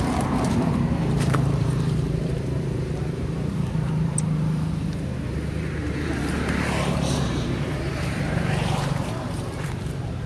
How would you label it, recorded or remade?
remade